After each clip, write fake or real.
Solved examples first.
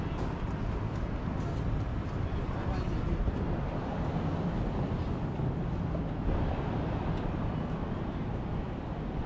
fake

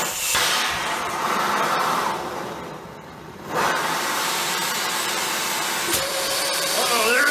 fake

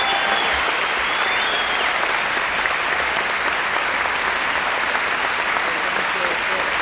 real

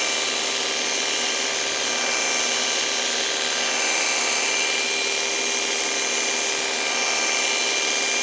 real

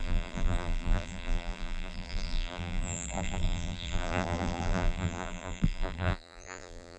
fake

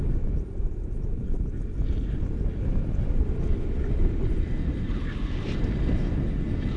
real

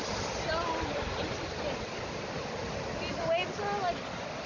real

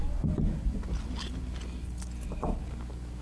real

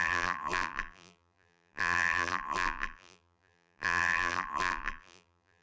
fake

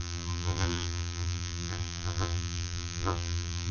fake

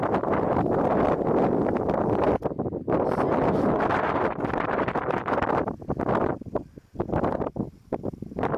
real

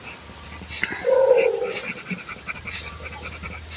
real